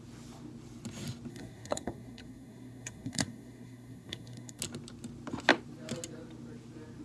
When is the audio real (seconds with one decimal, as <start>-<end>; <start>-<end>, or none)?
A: 0.0-1.3; 4.6-7.0